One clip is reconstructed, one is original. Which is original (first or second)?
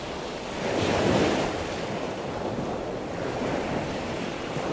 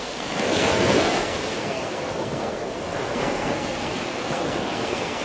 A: first